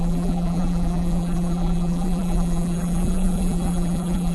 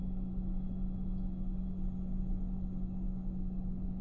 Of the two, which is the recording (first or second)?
second